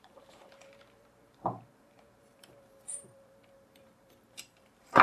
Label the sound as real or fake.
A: fake